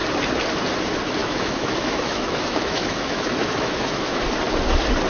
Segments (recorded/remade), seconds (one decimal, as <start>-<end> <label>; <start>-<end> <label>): 0.0-1.2 recorded; 1.2-4.2 remade; 4.2-5.1 recorded

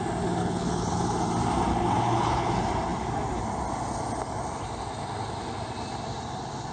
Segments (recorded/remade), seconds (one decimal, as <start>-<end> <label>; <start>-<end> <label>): 0.0-0.4 recorded; 0.4-1.0 remade; 1.0-1.7 recorded; 1.7-2.5 remade; 2.5-6.7 recorded

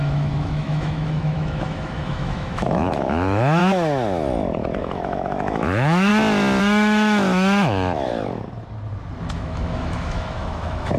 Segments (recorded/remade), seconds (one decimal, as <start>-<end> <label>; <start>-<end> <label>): 0.0-3.6 remade; 3.6-4.8 recorded; 4.8-6.1 remade; 6.1-6.6 recorded; 6.6-8.1 remade; 8.1-9.3 recorded; 9.3-11.0 remade

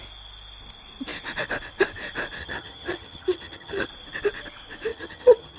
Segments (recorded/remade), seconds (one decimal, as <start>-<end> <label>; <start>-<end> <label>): 0.0-2.4 recorded; 2.4-3.9 remade; 3.9-4.9 recorded; 4.9-5.6 remade